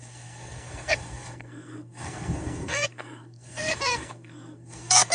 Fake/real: fake